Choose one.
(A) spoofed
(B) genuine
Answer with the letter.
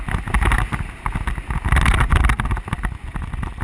B